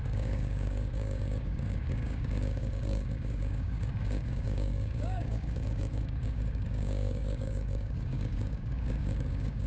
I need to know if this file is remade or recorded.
remade